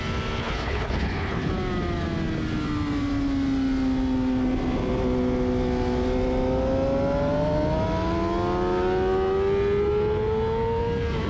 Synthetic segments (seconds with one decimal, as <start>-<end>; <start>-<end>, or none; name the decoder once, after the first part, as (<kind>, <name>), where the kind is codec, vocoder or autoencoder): 0.4-1.5 (codec, HILCodec)